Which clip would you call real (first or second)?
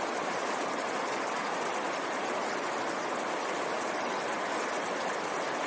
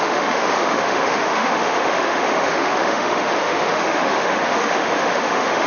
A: first